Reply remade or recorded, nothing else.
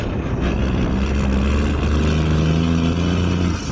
recorded